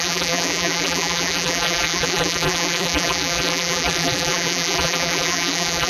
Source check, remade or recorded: remade